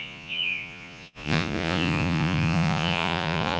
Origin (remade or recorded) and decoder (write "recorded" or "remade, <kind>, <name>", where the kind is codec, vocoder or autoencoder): remade, vocoder, Vocos